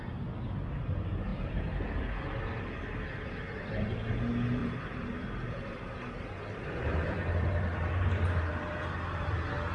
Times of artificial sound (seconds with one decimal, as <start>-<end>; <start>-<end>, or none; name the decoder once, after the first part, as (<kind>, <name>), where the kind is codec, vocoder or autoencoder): 1.3-2.2 (vocoder, BigVGAN v2); 4.6-8.5